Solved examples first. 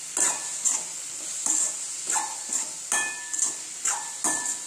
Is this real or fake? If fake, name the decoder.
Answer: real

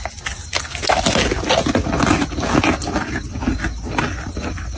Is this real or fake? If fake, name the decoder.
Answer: real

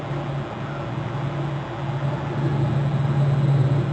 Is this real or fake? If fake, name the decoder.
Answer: real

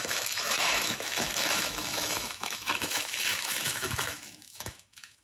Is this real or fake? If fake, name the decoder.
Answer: fake, autoencoder, DAC-VAE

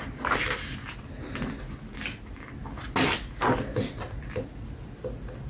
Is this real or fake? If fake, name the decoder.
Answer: real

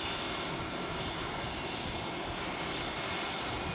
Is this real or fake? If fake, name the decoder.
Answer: real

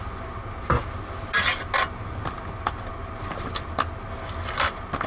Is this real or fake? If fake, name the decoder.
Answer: real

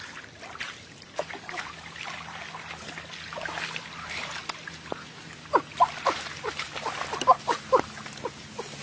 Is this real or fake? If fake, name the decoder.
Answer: real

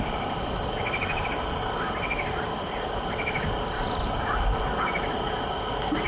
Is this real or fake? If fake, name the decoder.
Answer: real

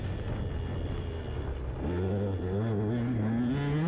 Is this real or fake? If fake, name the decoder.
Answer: real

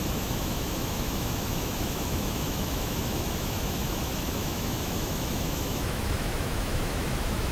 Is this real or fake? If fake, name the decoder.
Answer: fake, autoencoder, DAC-VAE